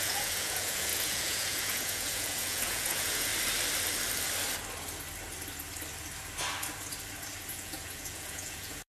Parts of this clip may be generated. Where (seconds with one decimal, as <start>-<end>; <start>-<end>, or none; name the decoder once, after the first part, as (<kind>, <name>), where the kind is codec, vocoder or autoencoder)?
0.0-3.3 (vocoder, Vocos); 7.5-8.9